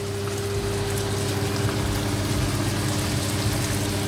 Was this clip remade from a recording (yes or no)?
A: no